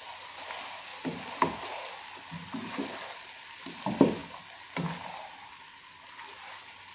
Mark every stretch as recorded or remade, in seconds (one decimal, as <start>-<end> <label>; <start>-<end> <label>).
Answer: 0.0-5.8 recorded; 5.8-6.5 remade; 6.5-6.9 recorded